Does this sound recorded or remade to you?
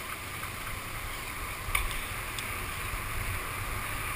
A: recorded